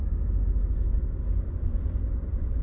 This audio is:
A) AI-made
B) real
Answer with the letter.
B